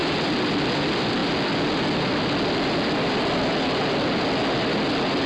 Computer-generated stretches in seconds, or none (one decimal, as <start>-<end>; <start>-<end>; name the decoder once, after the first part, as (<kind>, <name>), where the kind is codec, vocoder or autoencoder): none

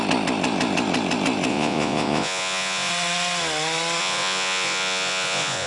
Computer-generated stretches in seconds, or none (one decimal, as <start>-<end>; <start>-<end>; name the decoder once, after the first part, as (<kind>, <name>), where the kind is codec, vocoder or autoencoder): 1.5-2.9 (vocoder, Vocos); 4.0-5.7